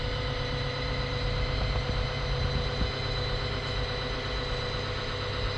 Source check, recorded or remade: recorded